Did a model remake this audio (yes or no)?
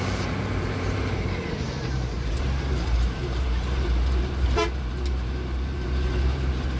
yes